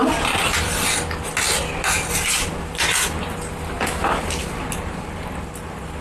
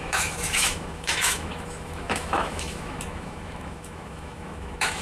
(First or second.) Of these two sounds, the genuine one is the first